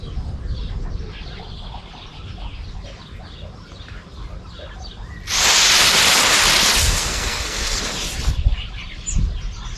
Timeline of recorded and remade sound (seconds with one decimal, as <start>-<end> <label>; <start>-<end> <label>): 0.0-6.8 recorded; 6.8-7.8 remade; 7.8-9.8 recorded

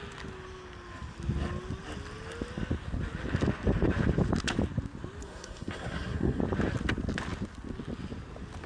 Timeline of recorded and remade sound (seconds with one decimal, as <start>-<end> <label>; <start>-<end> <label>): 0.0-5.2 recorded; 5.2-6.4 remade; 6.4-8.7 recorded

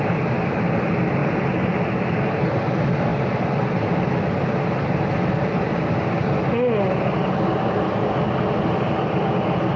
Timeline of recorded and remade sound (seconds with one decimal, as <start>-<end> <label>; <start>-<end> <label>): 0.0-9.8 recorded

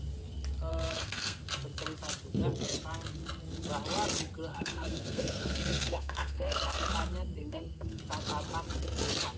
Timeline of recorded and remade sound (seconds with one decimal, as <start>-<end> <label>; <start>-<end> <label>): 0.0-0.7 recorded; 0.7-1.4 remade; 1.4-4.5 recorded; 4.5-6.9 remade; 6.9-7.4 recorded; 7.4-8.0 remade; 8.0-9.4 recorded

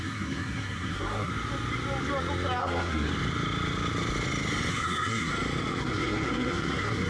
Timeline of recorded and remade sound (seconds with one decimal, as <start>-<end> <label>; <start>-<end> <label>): 0.0-1.3 remade; 1.3-2.6 recorded; 2.6-3.1 remade; 3.1-4.7 recorded; 4.7-5.3 remade; 5.3-5.8 recorded; 5.8-7.1 remade

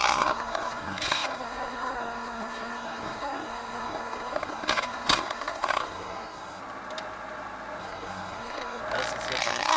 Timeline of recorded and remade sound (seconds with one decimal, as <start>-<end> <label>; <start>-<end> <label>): 0.0-6.6 remade; 6.6-7.8 recorded; 7.8-8.8 remade; 8.8-9.4 recorded; 9.4-9.8 remade

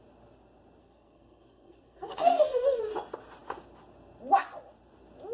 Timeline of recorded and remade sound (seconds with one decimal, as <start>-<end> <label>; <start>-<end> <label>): 0.0-0.8 recorded; 0.8-2.8 remade; 2.8-5.3 recorded